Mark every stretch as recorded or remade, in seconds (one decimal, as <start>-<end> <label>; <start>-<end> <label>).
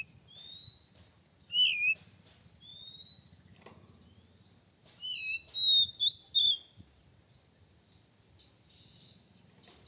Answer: 0.0-9.9 recorded